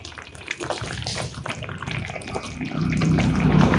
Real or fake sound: fake